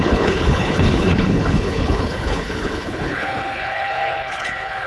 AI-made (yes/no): yes